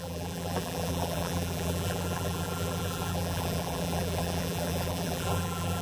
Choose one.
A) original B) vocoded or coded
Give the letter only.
B